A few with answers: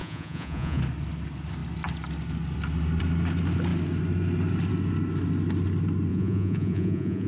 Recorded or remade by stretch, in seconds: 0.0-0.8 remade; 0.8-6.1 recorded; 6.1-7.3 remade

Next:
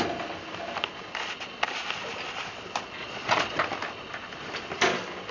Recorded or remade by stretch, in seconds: 0.0-3.0 recorded; 3.0-3.6 remade; 3.6-5.3 recorded